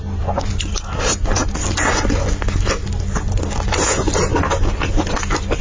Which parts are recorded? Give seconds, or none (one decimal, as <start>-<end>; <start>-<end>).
0.0-5.6